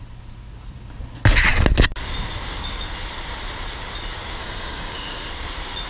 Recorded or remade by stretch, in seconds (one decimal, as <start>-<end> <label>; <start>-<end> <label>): 0.0-4.4 recorded; 4.4-5.3 remade; 5.3-5.9 recorded